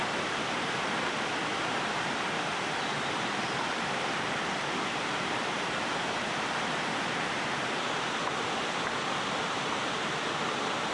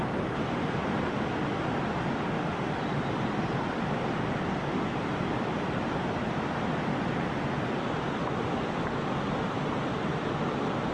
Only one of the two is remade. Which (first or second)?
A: first